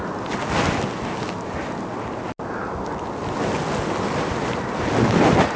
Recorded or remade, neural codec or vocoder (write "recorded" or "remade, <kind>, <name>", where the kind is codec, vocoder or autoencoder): recorded